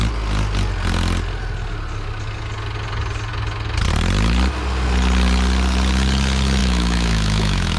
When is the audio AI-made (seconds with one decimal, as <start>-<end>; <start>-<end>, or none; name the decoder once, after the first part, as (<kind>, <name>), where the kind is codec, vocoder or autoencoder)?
6.6-7.8 (autoencoder, DAC-VAE)